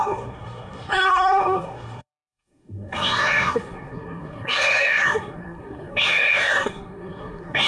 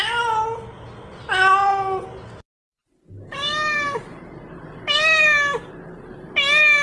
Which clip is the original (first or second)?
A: second